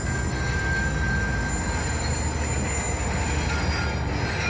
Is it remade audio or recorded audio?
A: recorded